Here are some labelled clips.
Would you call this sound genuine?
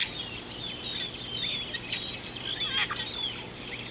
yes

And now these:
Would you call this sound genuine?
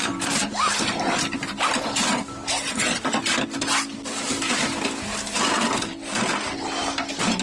yes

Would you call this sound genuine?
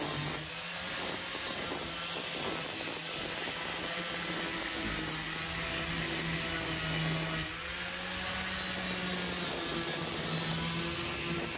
yes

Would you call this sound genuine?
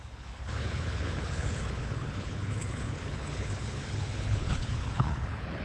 no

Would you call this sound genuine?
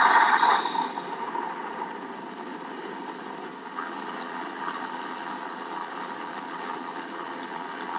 yes